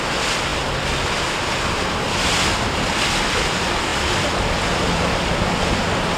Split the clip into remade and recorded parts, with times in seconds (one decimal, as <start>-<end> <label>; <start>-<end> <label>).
0.0-6.2 recorded